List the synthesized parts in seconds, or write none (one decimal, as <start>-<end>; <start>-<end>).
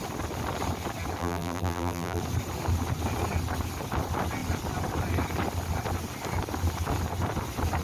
1.2-2.2